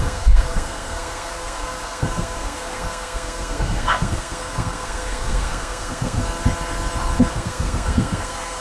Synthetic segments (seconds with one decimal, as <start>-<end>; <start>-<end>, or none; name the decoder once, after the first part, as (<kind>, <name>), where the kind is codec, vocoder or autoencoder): 0.0-6.2 (codec, SNAC); 7.3-8.6